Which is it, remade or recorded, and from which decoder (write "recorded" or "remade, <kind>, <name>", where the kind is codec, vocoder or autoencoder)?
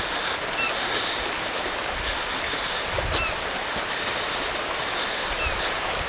recorded